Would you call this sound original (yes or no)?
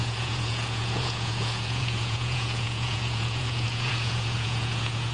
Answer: no